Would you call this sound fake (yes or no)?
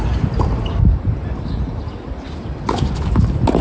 no